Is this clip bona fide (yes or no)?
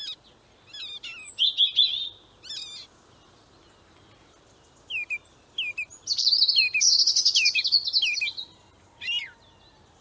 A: yes